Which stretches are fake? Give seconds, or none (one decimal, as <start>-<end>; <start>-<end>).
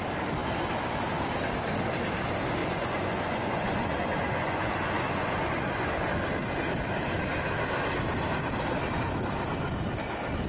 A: 2.6-6.1